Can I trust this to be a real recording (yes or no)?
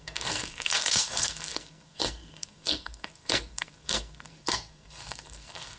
no